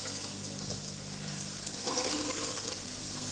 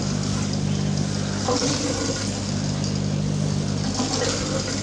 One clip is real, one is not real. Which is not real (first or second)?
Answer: first